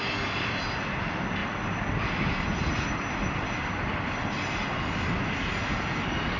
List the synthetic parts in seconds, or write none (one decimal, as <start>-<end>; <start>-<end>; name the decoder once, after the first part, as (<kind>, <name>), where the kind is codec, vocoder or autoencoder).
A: none